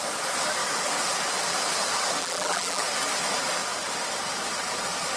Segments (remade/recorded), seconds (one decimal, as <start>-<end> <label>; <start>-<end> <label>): 0.0-2.2 recorded; 2.2-2.8 remade; 2.8-5.2 recorded